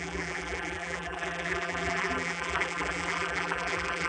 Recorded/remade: remade